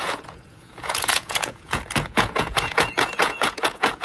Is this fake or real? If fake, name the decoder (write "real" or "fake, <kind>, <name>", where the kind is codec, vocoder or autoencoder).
fake, vocoder, Vocos